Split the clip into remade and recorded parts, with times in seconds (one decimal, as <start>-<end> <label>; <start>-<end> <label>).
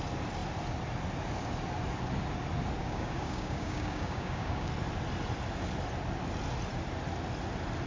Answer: 0.0-2.8 recorded; 2.8-4.7 remade; 4.7-7.9 recorded